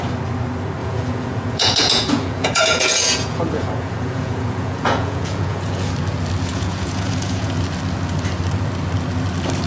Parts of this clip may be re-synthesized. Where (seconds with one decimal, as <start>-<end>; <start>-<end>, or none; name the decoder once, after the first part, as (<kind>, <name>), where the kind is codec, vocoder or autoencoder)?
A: 0.8-5.9 (vocoder, Vocos); 6.5-7.6